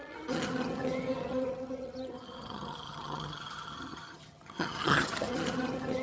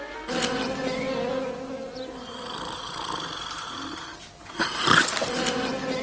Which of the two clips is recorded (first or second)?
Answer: second